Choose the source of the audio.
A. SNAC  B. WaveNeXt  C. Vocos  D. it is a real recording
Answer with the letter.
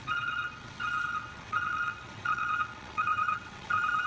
B